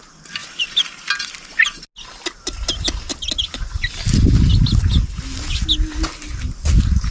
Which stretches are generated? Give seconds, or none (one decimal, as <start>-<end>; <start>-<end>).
none